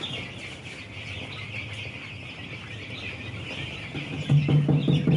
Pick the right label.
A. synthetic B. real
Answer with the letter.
B